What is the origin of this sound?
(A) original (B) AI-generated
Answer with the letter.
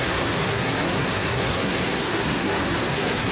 B